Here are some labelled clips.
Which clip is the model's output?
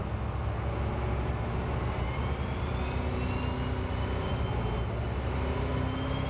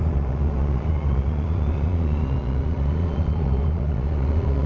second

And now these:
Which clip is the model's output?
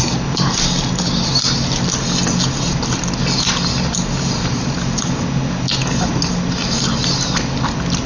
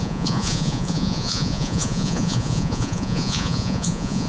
second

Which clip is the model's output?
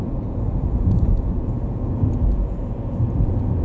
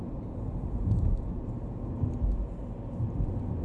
first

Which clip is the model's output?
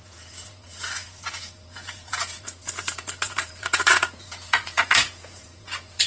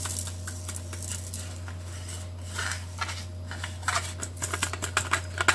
first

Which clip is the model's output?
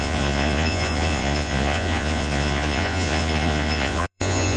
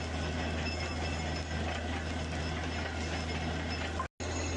first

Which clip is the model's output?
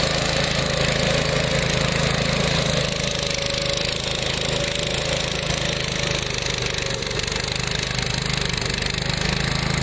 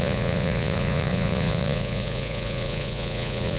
second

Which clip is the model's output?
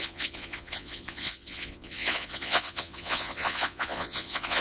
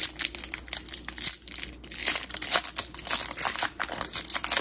first